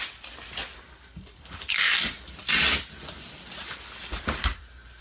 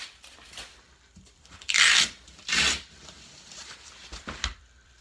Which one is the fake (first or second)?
second